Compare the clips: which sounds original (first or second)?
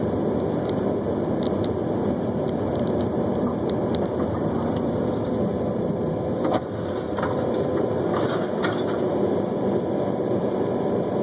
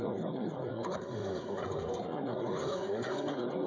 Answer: first